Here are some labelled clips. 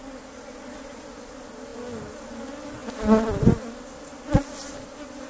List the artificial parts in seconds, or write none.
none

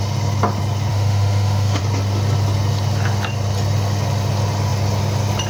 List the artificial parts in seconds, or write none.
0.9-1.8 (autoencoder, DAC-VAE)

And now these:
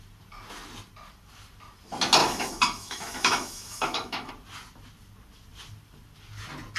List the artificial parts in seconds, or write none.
2.2-4.3 (autoencoder, DAC-VAE)

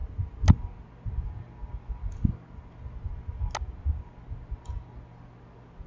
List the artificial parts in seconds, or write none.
none

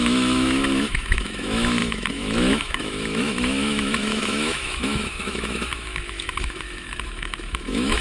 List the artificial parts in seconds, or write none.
0.0-8.0 (autoencoder, DAC-VAE)

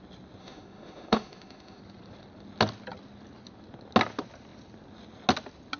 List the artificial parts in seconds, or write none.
0.4-1.8 (autoencoder, DAC-VAE)

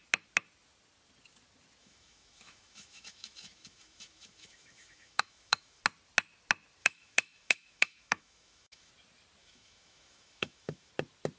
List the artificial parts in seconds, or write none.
1.8-5.8 (autoencoder, DAC-VAE); 6.8-8.9; 9.4-10.9